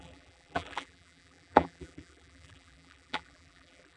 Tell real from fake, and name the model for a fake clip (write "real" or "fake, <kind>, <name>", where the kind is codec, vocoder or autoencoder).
fake, vocoder, BigVGAN v2